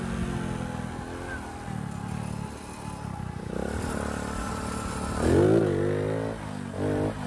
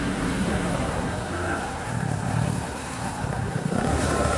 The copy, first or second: second